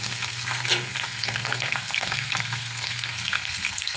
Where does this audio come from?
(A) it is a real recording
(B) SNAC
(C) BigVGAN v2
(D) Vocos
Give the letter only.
B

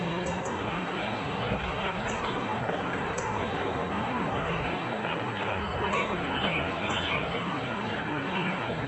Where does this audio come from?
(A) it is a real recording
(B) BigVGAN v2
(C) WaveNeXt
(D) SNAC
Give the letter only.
D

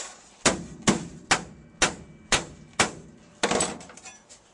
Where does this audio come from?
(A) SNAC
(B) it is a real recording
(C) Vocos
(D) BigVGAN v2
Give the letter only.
B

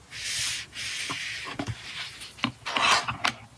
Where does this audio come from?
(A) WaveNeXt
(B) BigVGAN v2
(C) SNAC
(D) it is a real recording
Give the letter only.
D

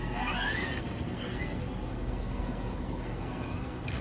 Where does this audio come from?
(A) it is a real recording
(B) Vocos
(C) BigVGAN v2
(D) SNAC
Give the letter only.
D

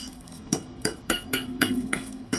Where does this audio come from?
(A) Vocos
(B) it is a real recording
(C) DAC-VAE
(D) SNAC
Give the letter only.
D